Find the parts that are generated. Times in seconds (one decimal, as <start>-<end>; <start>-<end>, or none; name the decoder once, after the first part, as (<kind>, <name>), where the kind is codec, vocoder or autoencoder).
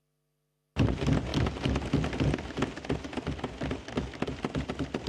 none